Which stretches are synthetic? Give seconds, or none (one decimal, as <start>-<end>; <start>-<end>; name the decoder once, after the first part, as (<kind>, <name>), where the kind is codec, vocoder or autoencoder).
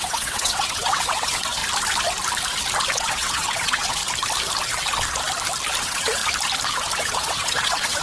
0.0-1.6 (vocoder, WaveNeXt); 2.9-4.0; 5.8-6.2; 7.0-8.0